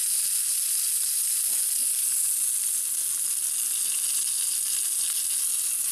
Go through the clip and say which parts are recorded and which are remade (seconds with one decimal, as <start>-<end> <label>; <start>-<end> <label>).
0.0-5.9 recorded